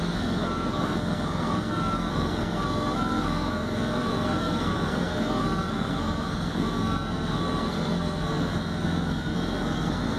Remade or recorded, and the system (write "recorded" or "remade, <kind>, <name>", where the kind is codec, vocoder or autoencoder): remade, codec, SNAC